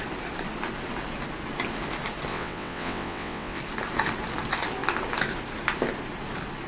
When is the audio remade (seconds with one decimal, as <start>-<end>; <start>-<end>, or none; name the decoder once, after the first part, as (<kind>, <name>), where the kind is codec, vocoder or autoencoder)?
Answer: 2.3-3.6 (vocoder, WaveNeXt)